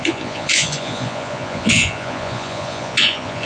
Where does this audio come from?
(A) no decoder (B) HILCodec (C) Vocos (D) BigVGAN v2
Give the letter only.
C